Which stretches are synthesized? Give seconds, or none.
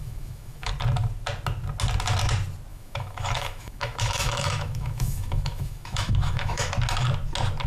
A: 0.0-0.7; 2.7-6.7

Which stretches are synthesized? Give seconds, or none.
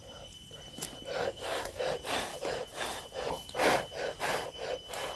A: 1.2-1.8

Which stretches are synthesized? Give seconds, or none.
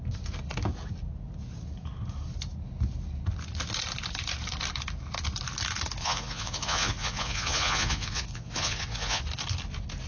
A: 6.0-9.2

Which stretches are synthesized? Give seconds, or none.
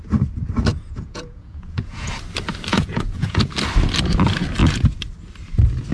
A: 0.7-2.1; 2.7-3.5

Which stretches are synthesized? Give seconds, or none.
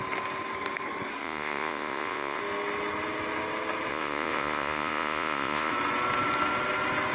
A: 1.2-2.4; 3.9-5.7